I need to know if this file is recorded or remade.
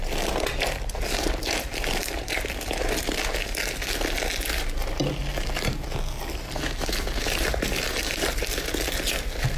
recorded